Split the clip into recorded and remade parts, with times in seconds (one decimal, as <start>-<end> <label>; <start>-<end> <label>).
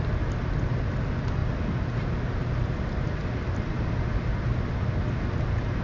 0.0-5.8 recorded